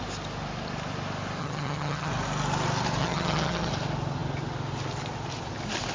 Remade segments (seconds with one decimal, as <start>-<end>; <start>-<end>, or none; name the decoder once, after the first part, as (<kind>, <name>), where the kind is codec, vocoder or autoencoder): 1.4-2.1 (vocoder, HiFi-GAN); 3.0-3.7